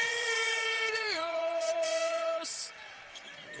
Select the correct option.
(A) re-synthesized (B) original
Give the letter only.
A